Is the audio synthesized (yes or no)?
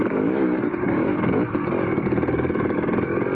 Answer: yes